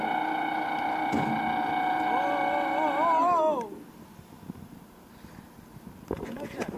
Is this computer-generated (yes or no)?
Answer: no